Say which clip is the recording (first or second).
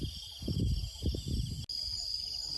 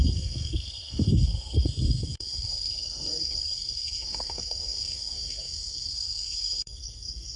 first